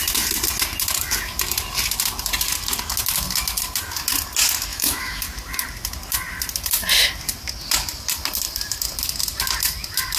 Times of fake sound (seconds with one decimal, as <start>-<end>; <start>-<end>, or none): 4.7-5.2